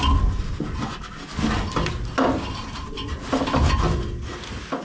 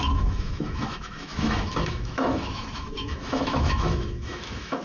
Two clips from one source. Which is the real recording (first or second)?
first